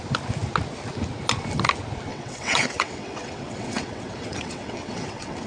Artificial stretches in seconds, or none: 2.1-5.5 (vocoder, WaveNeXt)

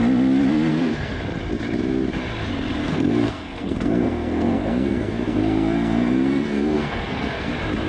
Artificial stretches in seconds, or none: 0.7-1.2 (codec, SNAC); 2.8-7.5

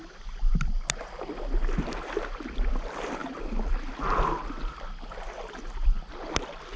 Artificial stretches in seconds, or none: none

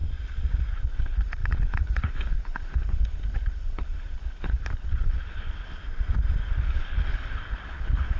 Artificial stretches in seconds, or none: 0.7-5.8 (codec, HILCodec); 6.4-8.2

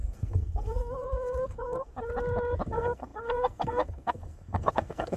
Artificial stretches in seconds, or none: 0.0-1.9 (codec, SNAC); 2.7-5.2

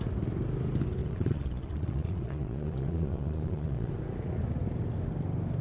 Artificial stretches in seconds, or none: 1.0-3.9 (vocoder, Vocos)

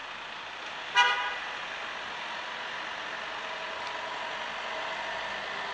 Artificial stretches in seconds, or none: none